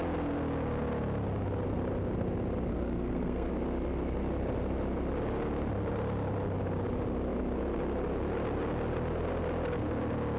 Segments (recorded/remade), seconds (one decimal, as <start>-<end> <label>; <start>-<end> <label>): 0.0-2.7 recorded; 2.7-3.5 remade; 3.5-10.4 recorded

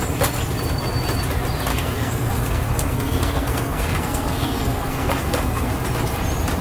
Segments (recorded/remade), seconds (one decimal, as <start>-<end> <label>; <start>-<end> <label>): 0.0-1.7 recorded; 1.7-5.7 remade; 5.7-6.6 recorded

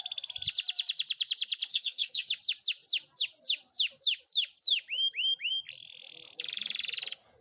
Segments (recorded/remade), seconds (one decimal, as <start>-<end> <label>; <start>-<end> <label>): 0.0-1.7 recorded; 1.7-2.3 remade; 2.3-7.4 recorded

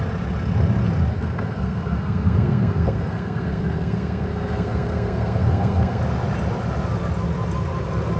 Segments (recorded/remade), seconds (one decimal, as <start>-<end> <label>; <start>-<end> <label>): 0.0-1.1 recorded; 1.1-6.0 remade; 6.0-8.2 recorded

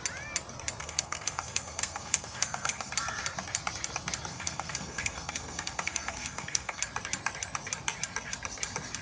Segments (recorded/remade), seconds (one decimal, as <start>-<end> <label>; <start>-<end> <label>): 0.0-0.8 recorded; 0.8-2.9 remade; 2.9-4.3 recorded; 4.3-6.8 remade; 6.8-9.0 recorded